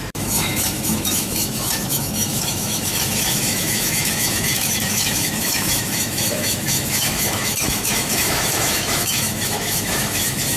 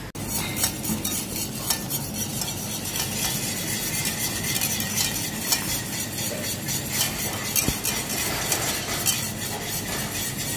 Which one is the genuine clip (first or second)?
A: second